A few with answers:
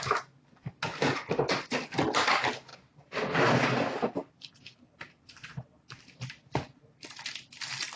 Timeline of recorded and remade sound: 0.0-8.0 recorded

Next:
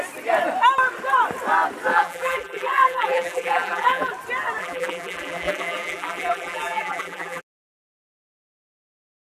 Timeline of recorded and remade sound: 0.0-1.9 recorded; 1.9-4.1 remade; 4.1-4.6 recorded; 4.6-7.4 remade; 7.4-9.3 recorded

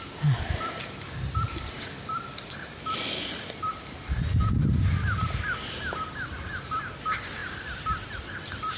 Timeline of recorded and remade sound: 0.0-4.4 recorded; 4.4-6.7 remade; 6.7-8.8 recorded

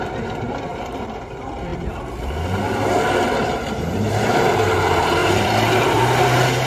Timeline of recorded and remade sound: 0.0-0.7 recorded; 0.7-1.2 remade; 1.2-5.2 recorded; 5.2-6.0 remade; 6.0-6.7 recorded

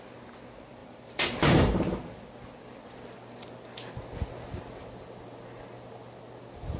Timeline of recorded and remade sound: 0.0-0.8 recorded; 0.8-2.3 remade; 2.3-6.8 recorded

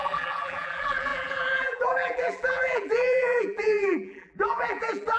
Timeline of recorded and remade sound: 0.0-5.2 remade

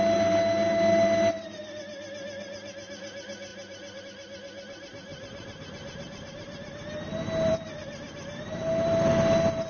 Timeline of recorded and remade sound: 0.0-3.5 recorded; 3.5-4.0 remade; 4.0-5.1 recorded; 5.1-9.1 remade; 9.1-9.7 recorded